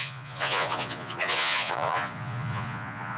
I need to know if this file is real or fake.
fake